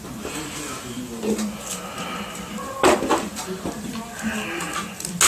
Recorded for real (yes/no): yes